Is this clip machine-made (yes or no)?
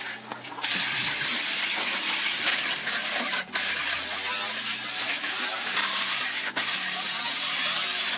no